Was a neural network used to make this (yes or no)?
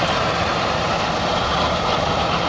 no